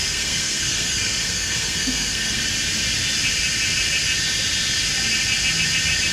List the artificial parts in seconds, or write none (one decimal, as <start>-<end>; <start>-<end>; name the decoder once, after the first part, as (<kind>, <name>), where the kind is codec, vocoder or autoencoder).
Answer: 0.0-2.4 (codec, SNAC)